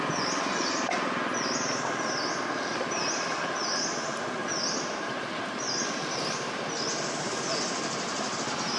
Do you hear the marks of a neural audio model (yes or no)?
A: no